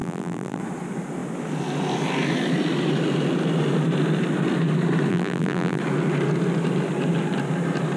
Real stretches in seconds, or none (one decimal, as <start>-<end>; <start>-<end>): 0.6-5.1; 5.8-8.0